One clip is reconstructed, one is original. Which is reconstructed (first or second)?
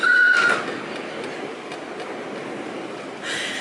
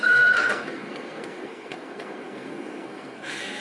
second